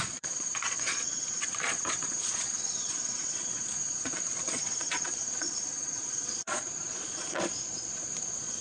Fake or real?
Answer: fake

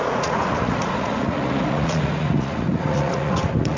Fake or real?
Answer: fake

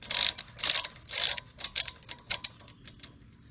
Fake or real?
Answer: real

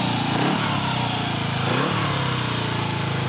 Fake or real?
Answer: real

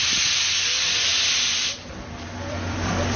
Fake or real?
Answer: fake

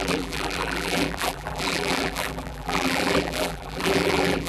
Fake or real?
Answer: fake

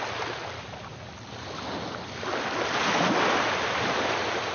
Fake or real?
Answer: real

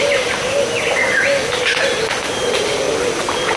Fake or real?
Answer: real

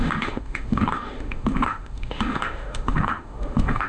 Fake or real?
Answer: fake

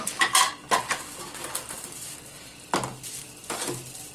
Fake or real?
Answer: real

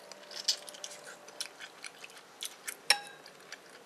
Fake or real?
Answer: real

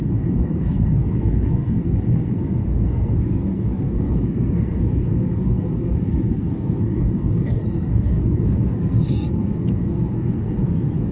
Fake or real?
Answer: fake